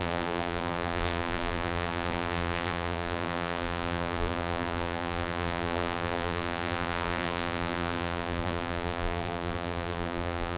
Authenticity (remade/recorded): remade